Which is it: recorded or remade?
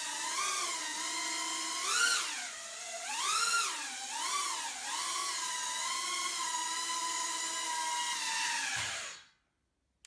recorded